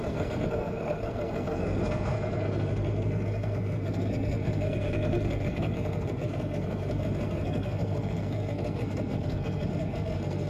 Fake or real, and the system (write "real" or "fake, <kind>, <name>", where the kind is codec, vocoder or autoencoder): fake, codec, SNAC